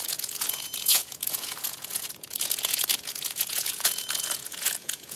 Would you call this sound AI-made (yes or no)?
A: yes